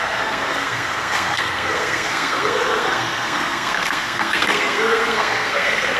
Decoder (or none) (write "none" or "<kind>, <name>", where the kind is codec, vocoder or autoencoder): codec, SNAC